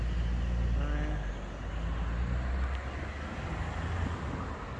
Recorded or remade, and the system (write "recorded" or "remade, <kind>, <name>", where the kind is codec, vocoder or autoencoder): recorded